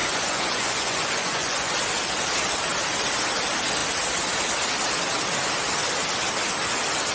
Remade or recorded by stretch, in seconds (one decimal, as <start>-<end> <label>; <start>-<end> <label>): 0.0-1.7 remade; 1.7-7.1 recorded